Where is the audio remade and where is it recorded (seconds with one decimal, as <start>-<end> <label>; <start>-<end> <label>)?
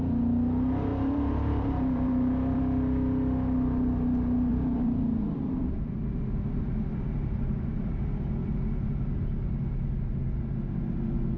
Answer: 0.0-0.9 recorded; 0.9-2.6 remade; 2.6-4.5 recorded; 4.5-7.9 remade; 7.9-11.4 recorded